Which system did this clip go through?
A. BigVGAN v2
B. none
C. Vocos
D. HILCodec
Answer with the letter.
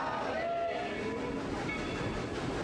B